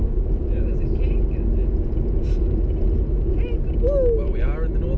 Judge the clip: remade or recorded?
recorded